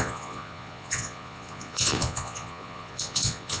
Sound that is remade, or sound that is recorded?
remade